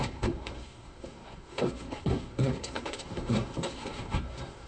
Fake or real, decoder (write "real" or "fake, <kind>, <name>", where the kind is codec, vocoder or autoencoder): fake, codec, SNAC